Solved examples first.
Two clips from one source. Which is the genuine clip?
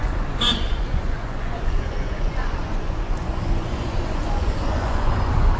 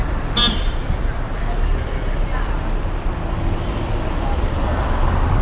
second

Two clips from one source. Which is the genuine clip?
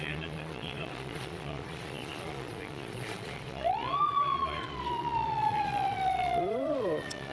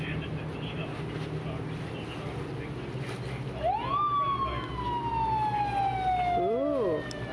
second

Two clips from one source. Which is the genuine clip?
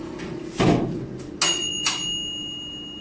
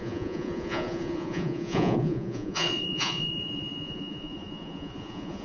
first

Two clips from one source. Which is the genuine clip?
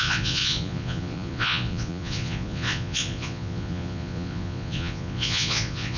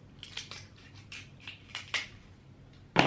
second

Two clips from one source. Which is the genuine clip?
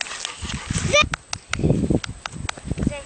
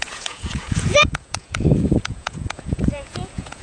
first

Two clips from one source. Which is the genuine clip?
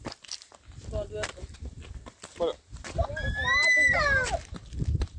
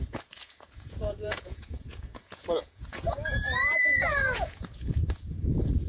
first